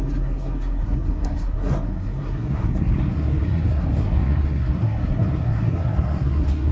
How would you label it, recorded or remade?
remade